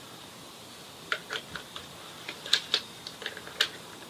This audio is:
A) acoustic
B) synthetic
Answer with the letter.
A